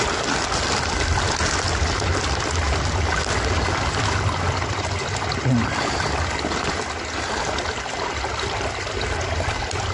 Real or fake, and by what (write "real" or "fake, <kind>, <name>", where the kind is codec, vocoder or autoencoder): real